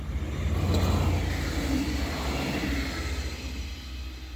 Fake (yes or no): no